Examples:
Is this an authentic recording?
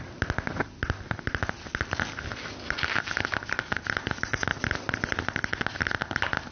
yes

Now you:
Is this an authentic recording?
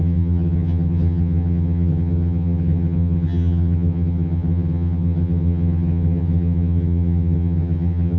no